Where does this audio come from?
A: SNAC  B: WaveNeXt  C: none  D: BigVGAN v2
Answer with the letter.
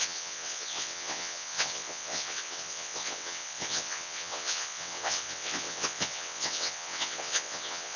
B